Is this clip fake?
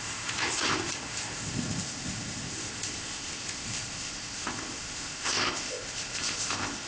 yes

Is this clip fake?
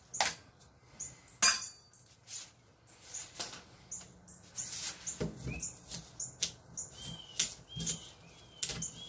no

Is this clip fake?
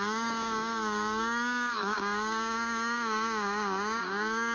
yes